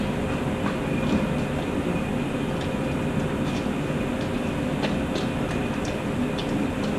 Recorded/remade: recorded